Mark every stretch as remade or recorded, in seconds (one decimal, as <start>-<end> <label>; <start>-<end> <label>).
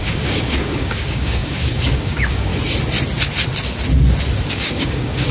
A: 0.0-2.5 remade; 2.5-4.5 recorded; 4.5-5.3 remade